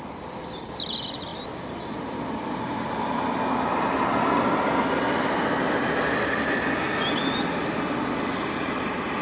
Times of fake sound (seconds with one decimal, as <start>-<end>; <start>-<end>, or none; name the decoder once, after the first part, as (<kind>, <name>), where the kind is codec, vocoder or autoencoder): none